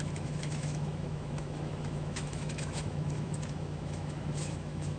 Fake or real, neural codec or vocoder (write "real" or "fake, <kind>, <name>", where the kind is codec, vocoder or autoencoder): fake, autoencoder, DAC-VAE